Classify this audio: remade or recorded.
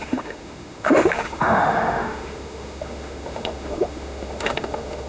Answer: remade